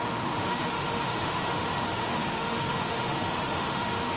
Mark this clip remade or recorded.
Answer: remade